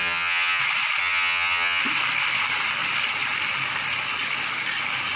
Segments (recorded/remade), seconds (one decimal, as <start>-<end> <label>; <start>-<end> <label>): 0.0-0.6 remade; 0.6-1.0 recorded; 1.0-1.8 remade; 1.8-5.2 recorded